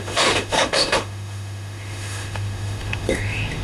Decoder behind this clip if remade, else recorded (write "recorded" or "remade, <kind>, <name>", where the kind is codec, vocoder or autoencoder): remade, autoencoder, DAC-VAE